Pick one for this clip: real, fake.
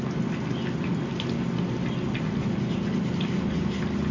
real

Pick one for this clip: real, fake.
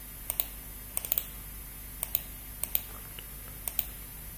real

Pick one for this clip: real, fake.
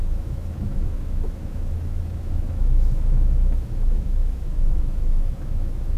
fake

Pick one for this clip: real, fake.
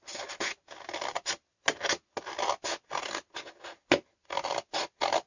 real